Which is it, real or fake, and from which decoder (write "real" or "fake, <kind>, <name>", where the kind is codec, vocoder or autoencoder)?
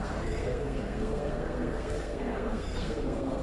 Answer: fake, codec, SNAC